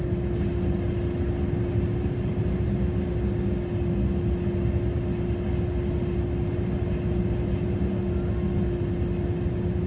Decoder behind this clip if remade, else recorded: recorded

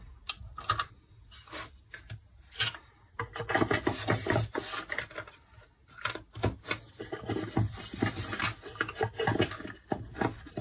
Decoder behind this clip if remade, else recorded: recorded